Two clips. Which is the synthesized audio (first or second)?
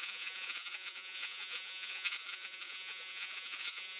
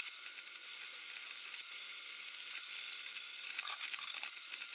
first